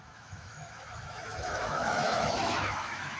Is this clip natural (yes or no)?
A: no